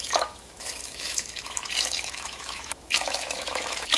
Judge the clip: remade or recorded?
remade